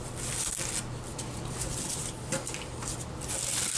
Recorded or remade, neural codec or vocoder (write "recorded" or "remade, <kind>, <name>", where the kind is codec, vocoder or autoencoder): recorded